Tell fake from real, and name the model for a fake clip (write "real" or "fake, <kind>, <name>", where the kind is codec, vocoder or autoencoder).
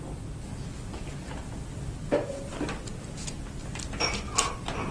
real